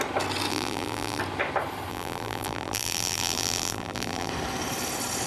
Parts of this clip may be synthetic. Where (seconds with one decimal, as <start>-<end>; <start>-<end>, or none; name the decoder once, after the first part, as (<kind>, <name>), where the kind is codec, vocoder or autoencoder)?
0.5-1.2 (vocoder, BigVGAN v2); 1.9-4.3